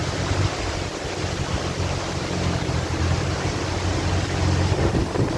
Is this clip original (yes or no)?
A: yes